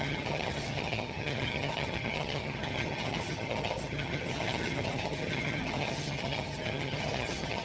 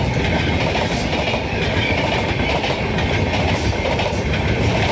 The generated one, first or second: first